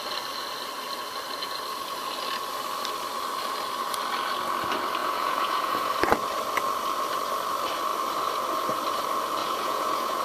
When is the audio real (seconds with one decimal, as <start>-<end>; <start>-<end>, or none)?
0.0-5.0; 5.9-9.4